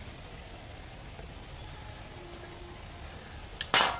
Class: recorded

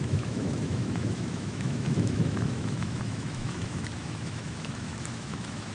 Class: remade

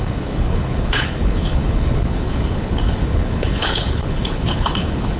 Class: remade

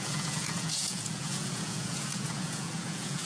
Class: remade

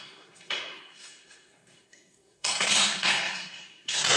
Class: remade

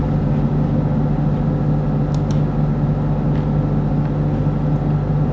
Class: recorded